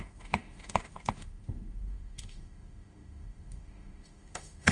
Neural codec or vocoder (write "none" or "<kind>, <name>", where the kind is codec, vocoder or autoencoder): autoencoder, DAC-VAE